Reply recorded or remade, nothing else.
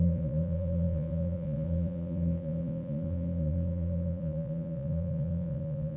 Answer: remade